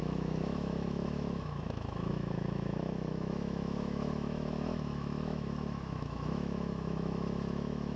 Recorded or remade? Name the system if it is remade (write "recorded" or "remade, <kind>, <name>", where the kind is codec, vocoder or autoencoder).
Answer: remade, autoencoder, DAC-VAE